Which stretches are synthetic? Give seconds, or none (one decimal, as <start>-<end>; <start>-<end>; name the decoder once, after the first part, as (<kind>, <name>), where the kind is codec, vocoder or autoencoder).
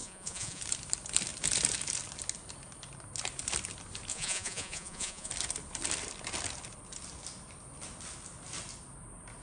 0.0-0.6 (vocoder, Vocos); 4.1-5.3